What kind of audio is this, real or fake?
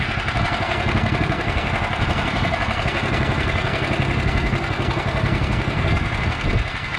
fake